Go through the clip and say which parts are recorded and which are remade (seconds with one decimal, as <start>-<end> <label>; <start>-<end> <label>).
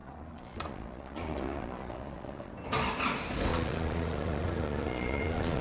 0.0-2.5 remade; 2.5-3.5 recorded; 3.5-5.6 remade